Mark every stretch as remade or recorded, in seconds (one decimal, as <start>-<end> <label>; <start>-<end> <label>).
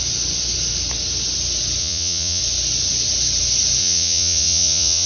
0.0-1.8 recorded; 1.8-2.4 remade; 2.4-3.8 recorded; 3.8-5.1 remade